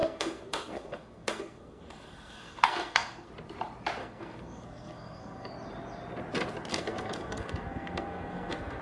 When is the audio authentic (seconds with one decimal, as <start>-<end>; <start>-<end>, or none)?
3.3-4.0; 5.5-6.7